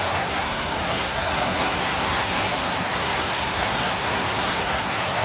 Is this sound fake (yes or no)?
yes